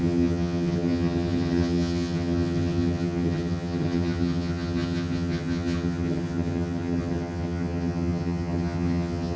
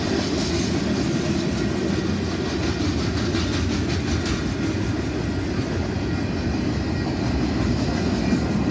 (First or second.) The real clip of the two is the second